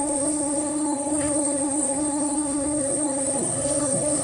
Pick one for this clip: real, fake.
fake